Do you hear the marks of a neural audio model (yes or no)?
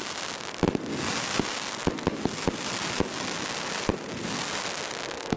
no